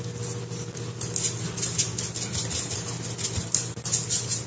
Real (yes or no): yes